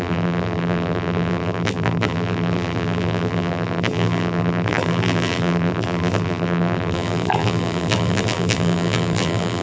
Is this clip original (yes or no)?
no